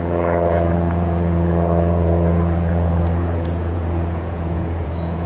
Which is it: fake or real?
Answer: fake